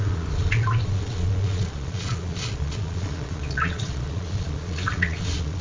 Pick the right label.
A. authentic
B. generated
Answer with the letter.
B